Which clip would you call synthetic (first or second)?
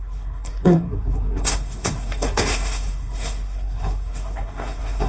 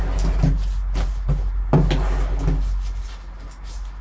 first